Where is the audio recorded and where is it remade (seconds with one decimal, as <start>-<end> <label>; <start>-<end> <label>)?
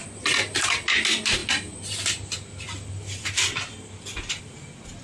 0.0-5.0 recorded